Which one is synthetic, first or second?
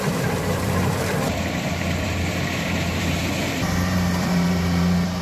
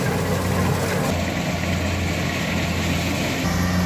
first